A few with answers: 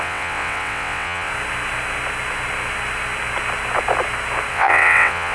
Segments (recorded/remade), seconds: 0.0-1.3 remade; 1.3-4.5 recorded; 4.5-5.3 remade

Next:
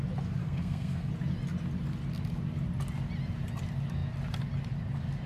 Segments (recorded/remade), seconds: 0.0-0.4 recorded; 0.4-1.1 remade; 1.1-5.3 recorded

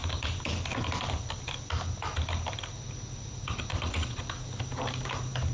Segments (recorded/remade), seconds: 0.0-3.7 recorded; 3.7-4.3 remade; 4.3-5.5 recorded

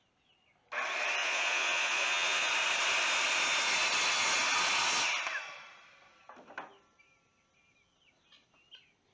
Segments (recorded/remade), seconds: 0.0-1.2 recorded; 1.2-2.5 remade; 2.5-9.1 recorded

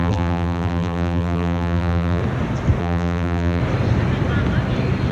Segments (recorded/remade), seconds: 0.0-2.2 remade; 2.2-2.8 recorded; 2.8-3.6 remade; 3.6-5.1 recorded

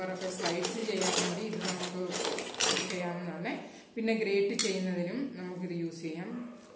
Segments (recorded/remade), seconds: 0.0-6.8 recorded